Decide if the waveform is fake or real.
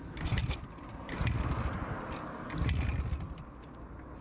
real